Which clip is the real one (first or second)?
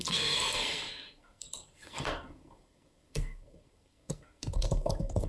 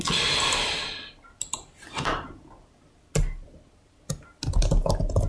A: second